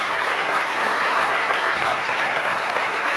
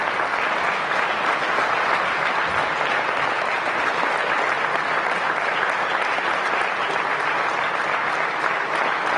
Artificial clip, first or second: first